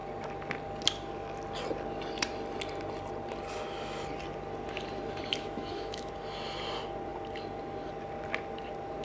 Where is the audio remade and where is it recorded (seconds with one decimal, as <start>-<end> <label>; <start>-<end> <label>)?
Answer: 0.0-5.3 recorded; 5.3-6.1 remade; 6.1-9.0 recorded